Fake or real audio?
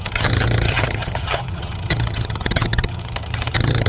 fake